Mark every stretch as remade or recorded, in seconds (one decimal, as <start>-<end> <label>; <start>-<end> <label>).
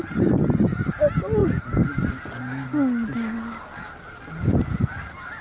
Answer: 0.0-3.7 recorded; 3.7-4.6 remade; 4.6-5.4 recorded